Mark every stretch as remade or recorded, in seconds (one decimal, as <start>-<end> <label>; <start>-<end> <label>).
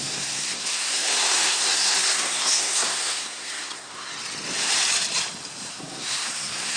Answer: 0.0-4.1 remade; 4.1-5.7 recorded; 5.7-6.8 remade